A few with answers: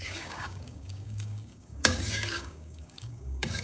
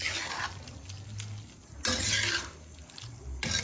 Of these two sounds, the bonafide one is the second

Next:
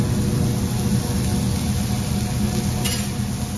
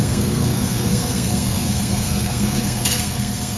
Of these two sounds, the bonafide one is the first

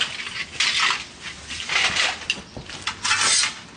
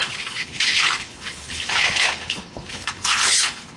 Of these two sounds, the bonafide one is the first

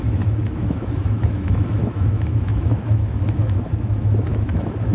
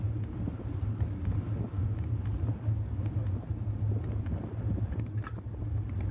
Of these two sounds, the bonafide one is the second